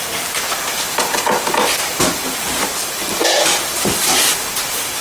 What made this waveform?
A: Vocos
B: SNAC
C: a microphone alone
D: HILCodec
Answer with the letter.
C